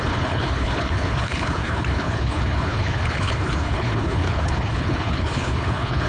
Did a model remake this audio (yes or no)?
yes